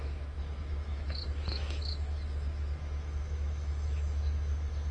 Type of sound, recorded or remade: remade